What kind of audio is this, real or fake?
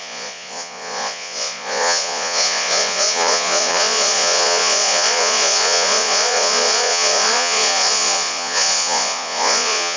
fake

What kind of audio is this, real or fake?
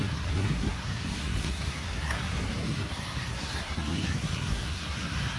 fake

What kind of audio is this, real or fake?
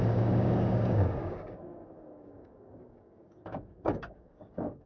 fake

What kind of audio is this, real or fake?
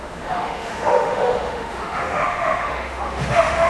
fake